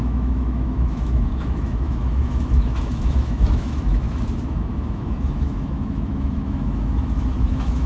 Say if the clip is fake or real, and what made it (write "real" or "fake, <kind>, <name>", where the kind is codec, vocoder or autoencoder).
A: fake, autoencoder, DAC-VAE